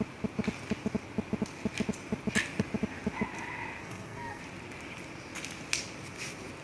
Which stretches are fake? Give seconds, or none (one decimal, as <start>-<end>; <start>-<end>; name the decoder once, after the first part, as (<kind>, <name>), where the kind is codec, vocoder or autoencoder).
3.8-4.4 (codec, SNAC)